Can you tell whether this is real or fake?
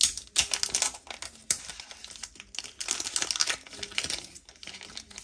real